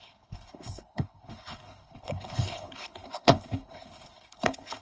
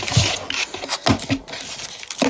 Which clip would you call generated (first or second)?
first